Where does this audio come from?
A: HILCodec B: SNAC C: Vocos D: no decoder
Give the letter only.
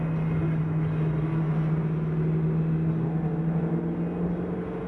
D